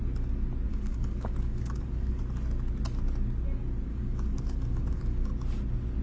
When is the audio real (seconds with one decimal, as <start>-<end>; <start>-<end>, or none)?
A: 0.0-0.7; 2.2-3.9; 5.3-6.0